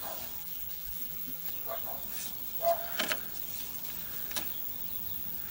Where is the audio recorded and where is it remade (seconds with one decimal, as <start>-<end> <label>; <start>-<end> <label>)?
0.0-0.4 recorded; 0.4-1.5 remade; 1.5-5.5 recorded